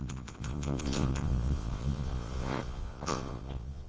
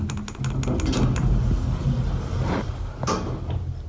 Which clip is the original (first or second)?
second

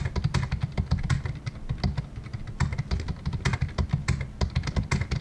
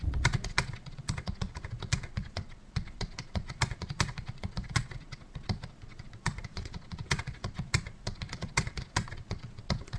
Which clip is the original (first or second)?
first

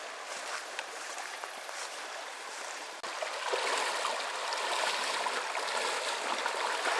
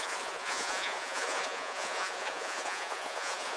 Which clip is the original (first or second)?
first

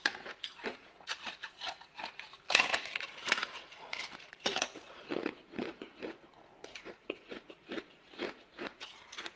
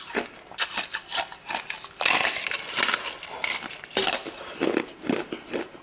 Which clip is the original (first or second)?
second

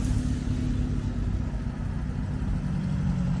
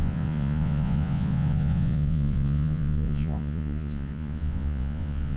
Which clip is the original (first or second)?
first